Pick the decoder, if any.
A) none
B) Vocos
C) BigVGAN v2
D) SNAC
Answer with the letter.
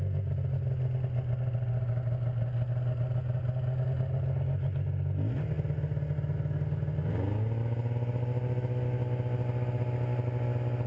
A